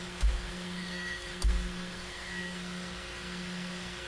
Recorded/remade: remade